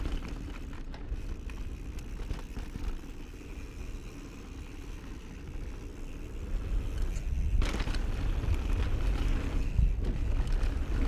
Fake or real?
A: real